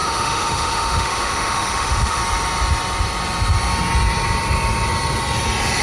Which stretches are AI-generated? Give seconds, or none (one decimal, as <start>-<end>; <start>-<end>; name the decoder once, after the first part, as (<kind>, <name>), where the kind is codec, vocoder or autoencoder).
0.0-2.2 (autoencoder, DAC-VAE)